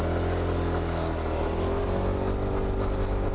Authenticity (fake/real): real